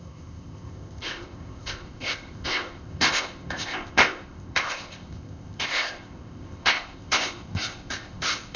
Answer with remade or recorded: remade